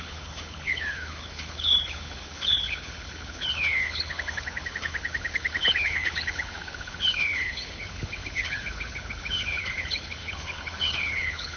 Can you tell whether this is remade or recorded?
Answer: remade